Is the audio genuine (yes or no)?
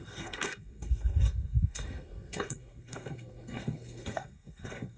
no